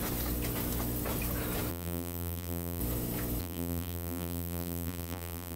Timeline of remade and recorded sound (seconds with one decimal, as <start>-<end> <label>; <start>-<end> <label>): 0.0-1.7 recorded; 1.7-2.8 remade; 2.8-3.4 recorded; 3.4-5.6 remade